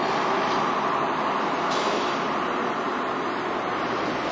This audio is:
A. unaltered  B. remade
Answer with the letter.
A